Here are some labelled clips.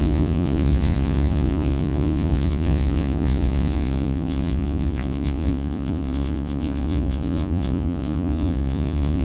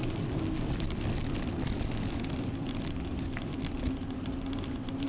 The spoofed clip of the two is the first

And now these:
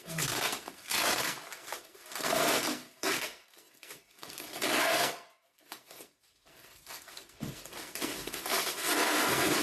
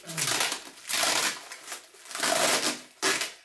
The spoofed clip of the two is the first